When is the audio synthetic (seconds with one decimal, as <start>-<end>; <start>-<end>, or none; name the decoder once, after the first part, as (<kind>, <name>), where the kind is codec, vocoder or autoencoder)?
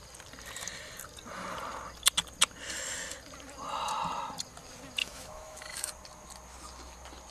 5.0-5.9 (autoencoder, DAC-VAE)